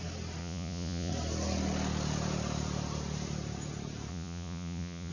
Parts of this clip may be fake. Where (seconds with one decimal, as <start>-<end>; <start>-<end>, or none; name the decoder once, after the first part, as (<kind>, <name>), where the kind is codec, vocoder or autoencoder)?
0.4-1.1 (vocoder, Vocos); 4.1-5.1